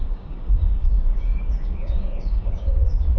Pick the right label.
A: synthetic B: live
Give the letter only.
A